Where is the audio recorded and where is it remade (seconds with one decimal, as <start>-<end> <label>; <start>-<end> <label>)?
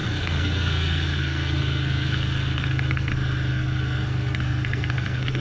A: 0.0-3.1 remade; 3.1-3.5 recorded; 3.5-5.4 remade